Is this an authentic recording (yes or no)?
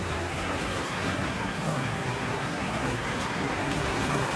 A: no